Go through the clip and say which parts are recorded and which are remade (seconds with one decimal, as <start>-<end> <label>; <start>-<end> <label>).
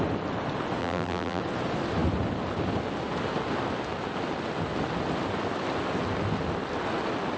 0.0-0.8 recorded; 0.8-1.4 remade; 1.4-7.4 recorded